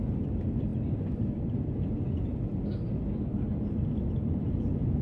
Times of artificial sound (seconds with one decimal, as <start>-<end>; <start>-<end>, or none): none